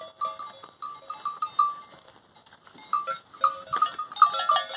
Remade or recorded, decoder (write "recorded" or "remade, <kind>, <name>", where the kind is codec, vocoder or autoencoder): recorded